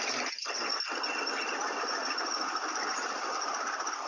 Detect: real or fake real